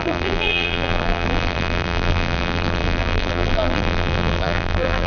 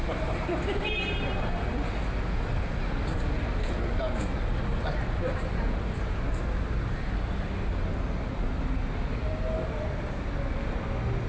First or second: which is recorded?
second